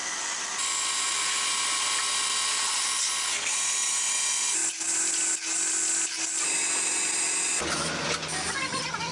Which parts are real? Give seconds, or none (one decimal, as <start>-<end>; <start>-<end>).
4.6-7.5